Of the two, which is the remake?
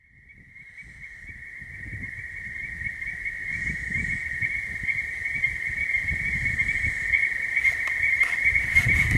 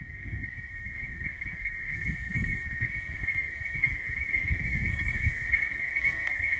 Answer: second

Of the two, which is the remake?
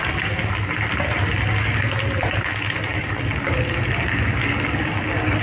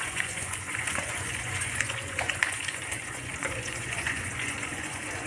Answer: second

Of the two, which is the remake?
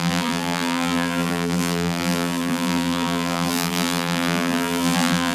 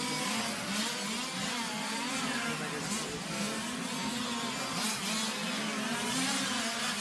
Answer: first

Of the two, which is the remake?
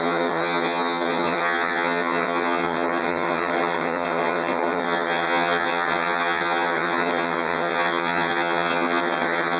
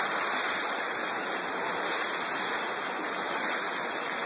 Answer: first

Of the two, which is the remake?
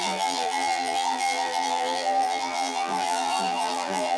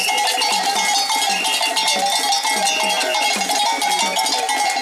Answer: first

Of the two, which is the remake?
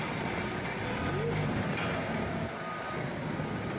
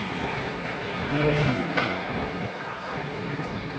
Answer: second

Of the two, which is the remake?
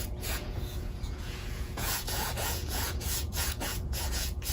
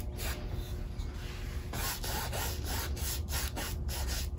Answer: first